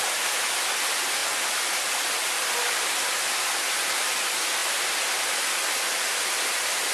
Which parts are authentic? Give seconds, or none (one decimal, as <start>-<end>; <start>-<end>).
0.0-6.9